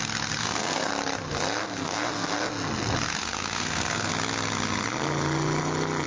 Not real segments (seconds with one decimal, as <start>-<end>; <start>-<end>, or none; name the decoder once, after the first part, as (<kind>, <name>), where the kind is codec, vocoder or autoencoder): 0.4-0.9 (codec, SNAC); 1.6-2.5; 3.2-4.1